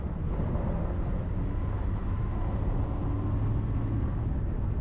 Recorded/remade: recorded